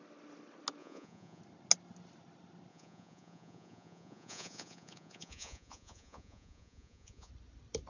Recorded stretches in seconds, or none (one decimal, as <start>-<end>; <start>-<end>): 0.0-0.8; 1.4-2.7; 7.3-7.9